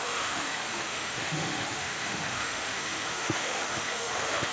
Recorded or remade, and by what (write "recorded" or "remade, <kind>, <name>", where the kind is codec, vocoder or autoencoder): remade, autoencoder, DAC-VAE